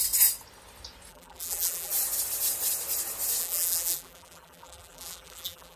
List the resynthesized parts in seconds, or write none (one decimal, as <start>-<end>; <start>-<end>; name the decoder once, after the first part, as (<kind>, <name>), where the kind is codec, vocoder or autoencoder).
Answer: 1.1-1.9 (vocoder, BigVGAN v2); 3.4-5.8